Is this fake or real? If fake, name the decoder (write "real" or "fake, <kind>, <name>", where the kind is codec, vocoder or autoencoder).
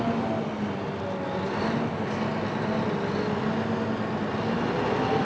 real